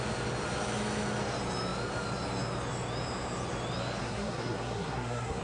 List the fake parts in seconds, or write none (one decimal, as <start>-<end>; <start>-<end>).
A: 4.0-5.4